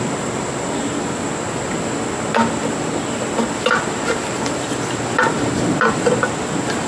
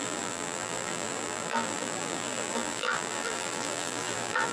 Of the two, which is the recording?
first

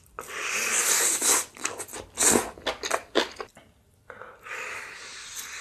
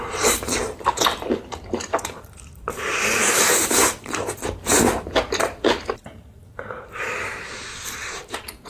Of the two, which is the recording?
first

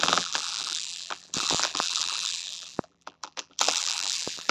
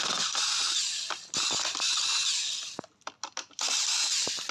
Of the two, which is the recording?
second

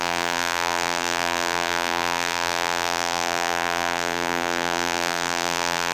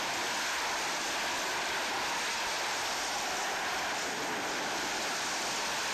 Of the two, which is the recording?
second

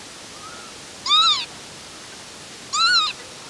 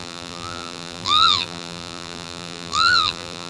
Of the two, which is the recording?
first